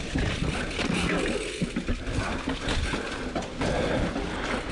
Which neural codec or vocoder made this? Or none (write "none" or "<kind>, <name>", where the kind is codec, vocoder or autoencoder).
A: none